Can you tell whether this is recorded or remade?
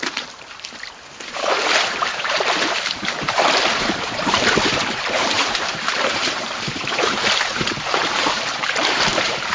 remade